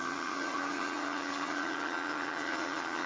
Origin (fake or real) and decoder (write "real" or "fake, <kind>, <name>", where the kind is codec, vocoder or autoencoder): fake, vocoder, HiFi-GAN